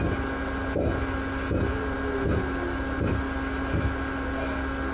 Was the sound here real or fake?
real